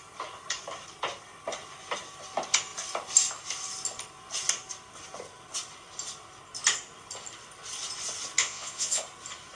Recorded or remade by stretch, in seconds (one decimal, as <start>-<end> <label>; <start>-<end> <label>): 0.0-8.4 recorded; 8.4-9.0 remade; 9.0-9.6 recorded